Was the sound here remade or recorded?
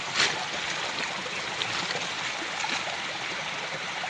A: recorded